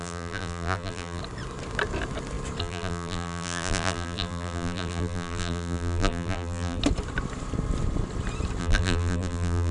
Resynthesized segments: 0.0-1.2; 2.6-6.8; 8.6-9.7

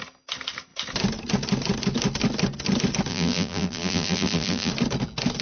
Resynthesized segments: 3.1-4.7